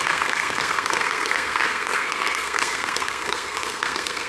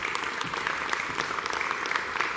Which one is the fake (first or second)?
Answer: first